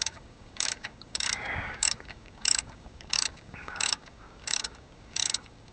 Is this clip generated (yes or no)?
yes